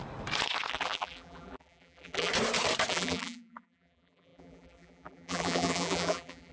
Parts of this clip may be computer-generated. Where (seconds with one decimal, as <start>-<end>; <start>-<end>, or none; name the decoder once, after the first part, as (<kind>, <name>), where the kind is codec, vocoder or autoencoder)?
0.7-2.3 (vocoder, BigVGAN v2); 2.9-6.5